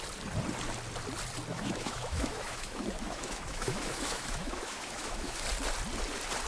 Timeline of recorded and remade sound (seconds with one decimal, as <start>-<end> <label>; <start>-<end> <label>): 0.0-1.5 recorded; 1.5-5.4 remade; 5.4-6.5 recorded